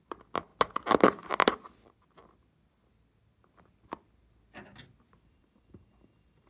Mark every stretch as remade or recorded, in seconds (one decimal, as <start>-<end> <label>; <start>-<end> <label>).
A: 0.0-6.5 recorded